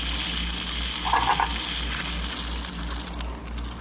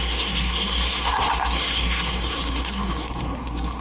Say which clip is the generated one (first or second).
second